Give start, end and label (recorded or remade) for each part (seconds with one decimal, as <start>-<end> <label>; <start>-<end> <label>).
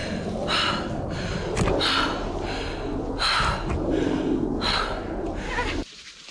0.0-6.3 recorded